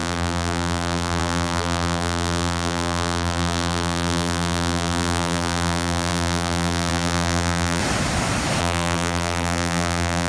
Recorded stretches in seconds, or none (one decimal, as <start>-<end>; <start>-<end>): 7.8-8.6